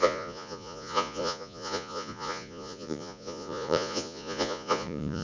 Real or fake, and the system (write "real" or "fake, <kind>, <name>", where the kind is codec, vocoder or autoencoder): fake, vocoder, Vocos